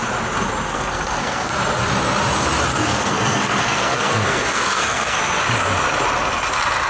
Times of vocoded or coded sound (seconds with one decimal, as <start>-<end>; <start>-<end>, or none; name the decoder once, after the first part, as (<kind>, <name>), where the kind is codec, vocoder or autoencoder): 0.7-1.5 (codec, SNAC); 2.7-5.2